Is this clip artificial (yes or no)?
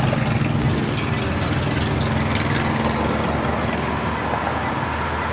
no